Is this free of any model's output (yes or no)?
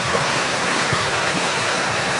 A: no